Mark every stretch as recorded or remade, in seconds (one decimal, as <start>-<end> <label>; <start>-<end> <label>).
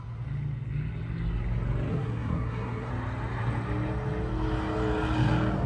0.0-1.9 recorded; 1.9-2.9 remade; 2.9-5.7 recorded